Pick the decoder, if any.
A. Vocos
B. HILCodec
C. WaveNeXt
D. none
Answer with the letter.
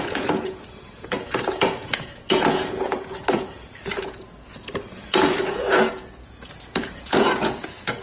A